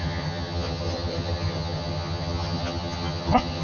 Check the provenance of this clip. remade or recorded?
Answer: remade